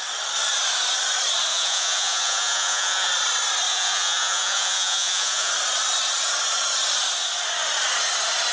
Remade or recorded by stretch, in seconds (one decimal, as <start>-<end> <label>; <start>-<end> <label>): 0.0-1.5 recorded; 1.5-3.1 remade; 3.1-3.7 recorded; 3.7-5.5 remade; 5.5-8.5 recorded